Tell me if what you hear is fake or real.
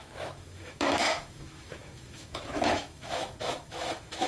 fake